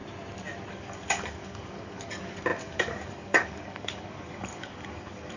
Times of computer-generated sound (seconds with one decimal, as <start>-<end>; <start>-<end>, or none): 0.7-5.4